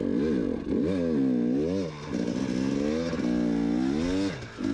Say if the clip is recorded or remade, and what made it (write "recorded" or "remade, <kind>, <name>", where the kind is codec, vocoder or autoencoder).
recorded